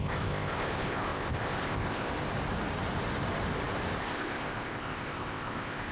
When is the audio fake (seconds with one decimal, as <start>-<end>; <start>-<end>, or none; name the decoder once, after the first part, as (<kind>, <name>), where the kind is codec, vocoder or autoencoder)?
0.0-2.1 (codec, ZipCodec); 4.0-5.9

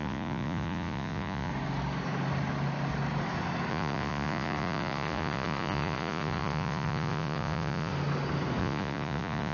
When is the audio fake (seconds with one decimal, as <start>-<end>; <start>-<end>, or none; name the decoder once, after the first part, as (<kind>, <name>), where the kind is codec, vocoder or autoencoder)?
0.0-1.5 (vocoder, Vocos); 3.7-7.9; 8.6-9.5

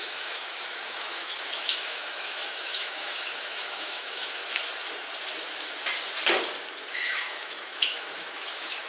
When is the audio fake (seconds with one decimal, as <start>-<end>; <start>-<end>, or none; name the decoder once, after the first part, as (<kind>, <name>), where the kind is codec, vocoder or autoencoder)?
0.0-4.4 (autoencoder, DAC-VAE); 6.9-8.9

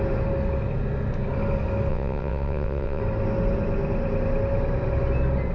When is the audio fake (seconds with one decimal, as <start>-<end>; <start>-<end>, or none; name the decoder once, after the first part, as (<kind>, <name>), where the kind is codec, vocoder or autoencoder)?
1.9-3.0 (vocoder, WaveNeXt)

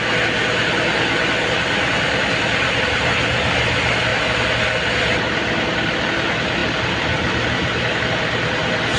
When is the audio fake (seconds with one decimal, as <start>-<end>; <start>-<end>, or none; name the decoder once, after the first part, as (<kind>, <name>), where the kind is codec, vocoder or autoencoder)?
none